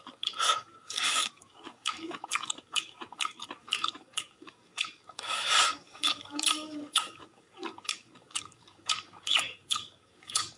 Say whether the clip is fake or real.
fake